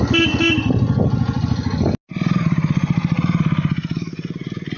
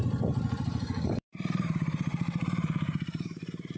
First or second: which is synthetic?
second